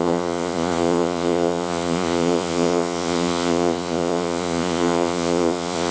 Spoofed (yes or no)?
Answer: yes